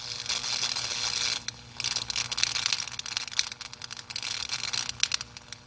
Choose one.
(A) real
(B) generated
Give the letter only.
A